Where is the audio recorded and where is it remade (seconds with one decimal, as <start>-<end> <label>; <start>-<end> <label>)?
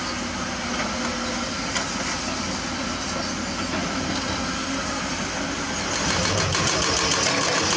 0.0-7.8 recorded